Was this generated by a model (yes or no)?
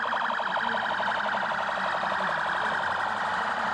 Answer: no